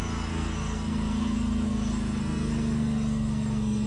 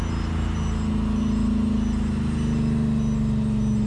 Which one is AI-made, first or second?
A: first